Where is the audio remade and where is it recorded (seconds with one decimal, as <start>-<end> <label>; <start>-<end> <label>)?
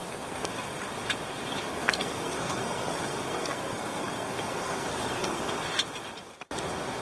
0.0-0.5 remade; 0.5-1.7 recorded; 1.7-5.5 remade; 5.5-7.0 recorded